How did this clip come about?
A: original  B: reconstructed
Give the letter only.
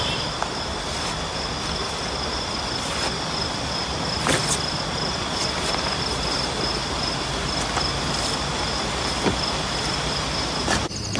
A